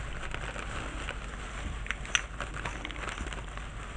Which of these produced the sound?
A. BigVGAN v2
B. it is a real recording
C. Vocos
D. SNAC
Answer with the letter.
B